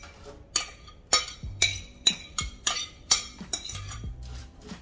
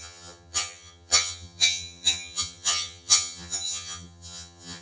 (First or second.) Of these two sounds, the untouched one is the first